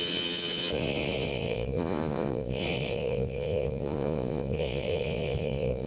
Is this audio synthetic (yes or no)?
yes